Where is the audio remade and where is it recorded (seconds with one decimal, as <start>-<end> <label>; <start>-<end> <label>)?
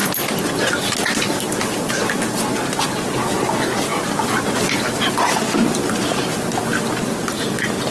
0.0-7.9 recorded